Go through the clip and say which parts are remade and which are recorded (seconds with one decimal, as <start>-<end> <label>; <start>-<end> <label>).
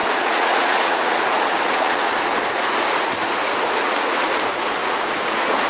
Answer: 0.0-5.7 remade